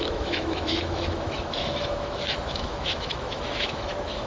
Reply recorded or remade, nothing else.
remade